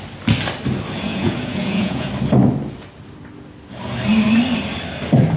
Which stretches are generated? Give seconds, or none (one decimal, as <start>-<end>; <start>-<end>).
1.1-2.1